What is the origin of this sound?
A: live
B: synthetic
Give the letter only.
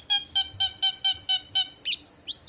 A